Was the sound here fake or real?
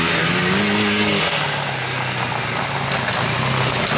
real